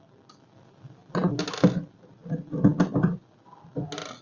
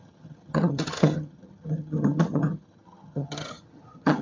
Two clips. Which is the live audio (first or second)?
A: first